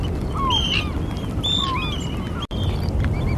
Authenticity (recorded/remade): recorded